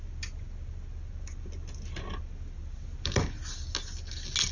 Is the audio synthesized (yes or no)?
no